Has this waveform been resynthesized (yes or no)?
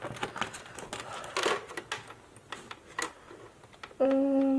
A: no